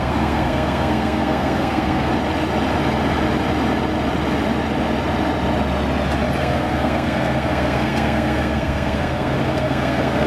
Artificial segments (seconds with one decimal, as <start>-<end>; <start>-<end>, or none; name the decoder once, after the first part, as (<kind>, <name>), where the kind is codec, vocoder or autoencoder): 0.0-2.1 (codec, SNAC); 6.4-10.3